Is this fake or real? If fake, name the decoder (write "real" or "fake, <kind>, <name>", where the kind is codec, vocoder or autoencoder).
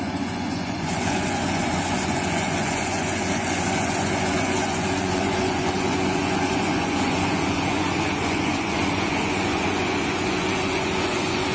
fake, vocoder, Vocos